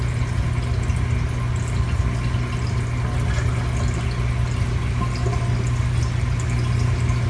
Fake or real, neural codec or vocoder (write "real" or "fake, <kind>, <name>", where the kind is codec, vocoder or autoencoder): real